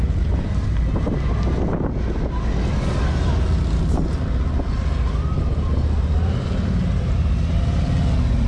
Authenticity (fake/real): real